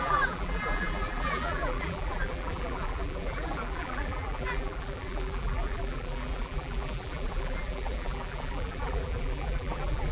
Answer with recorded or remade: remade